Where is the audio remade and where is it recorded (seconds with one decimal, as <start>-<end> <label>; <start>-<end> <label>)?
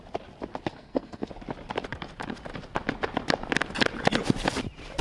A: 0.0-0.7 recorded; 0.7-1.3 remade; 1.3-5.0 recorded